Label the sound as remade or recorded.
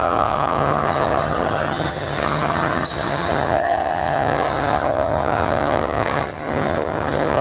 remade